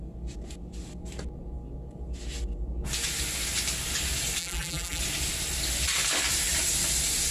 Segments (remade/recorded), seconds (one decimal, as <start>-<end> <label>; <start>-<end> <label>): 0.0-4.4 recorded; 4.4-5.0 remade; 5.0-7.3 recorded